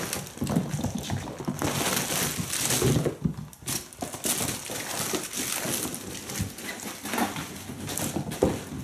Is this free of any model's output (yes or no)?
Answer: yes